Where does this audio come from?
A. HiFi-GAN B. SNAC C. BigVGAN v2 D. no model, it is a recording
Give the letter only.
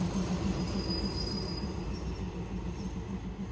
D